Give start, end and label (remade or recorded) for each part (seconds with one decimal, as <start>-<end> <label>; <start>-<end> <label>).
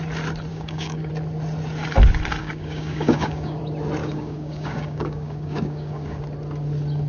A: 0.0-0.5 recorded; 0.5-1.1 remade; 1.1-2.4 recorded; 2.4-3.6 remade; 3.6-4.0 recorded; 4.0-6.2 remade; 6.2-7.1 recorded